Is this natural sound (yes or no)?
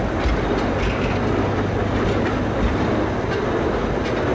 yes